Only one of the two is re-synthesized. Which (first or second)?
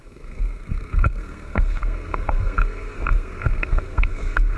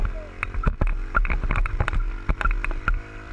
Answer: first